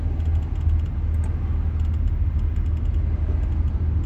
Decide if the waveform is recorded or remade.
recorded